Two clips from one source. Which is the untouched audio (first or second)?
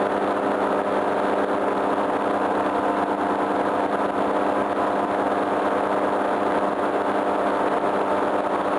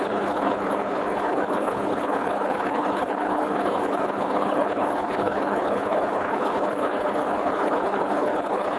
first